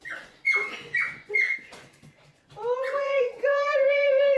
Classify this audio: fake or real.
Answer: fake